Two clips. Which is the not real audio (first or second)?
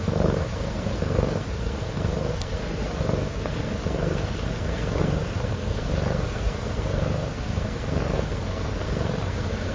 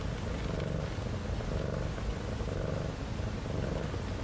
first